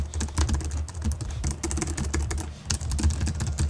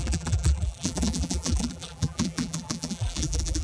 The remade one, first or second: second